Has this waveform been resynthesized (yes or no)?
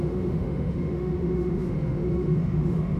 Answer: yes